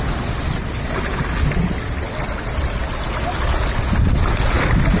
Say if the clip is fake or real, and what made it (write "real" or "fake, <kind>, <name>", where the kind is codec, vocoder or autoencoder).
real